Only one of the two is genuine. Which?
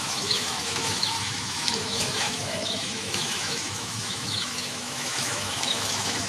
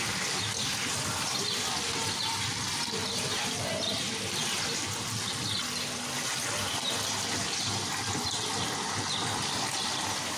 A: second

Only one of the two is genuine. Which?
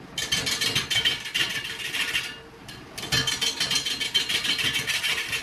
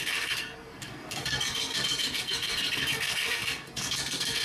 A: first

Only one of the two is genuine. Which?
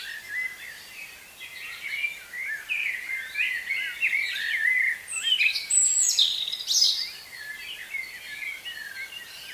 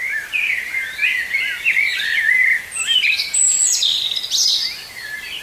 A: first